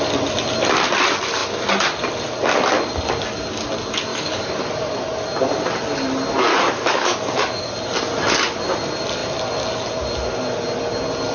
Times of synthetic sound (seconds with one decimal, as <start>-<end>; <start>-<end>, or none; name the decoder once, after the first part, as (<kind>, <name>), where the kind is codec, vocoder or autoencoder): 4.1-4.6 (codec, DAC); 6.5-7.7